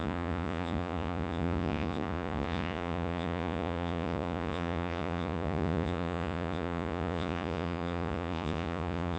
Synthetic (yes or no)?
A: yes